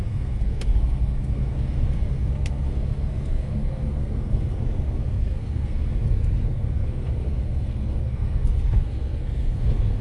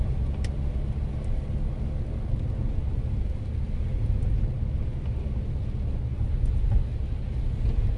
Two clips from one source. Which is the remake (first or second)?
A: first